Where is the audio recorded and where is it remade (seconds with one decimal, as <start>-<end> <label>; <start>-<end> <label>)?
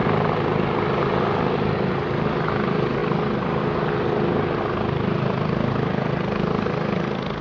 0.0-7.4 recorded